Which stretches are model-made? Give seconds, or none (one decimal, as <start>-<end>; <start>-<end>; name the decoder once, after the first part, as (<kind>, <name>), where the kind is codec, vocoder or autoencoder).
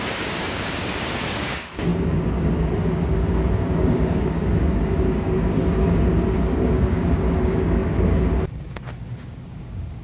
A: 0.0-10.0 (codec, DAC)